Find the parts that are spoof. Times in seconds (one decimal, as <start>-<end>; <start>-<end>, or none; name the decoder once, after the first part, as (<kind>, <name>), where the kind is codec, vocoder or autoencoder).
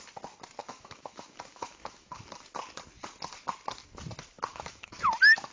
0.6-2.1 (autoencoder, DAC-VAE); 4.5-5.1